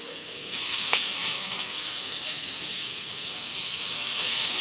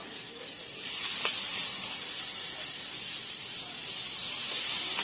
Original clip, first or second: second